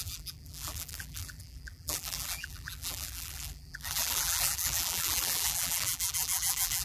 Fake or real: fake